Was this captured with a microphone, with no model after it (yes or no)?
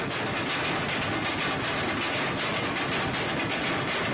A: yes